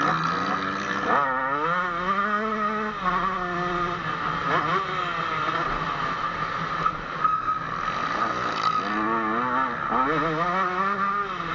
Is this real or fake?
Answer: real